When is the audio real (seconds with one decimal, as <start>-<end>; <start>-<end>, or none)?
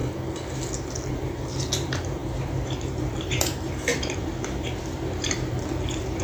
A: 0.0-1.1